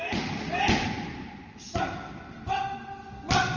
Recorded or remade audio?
recorded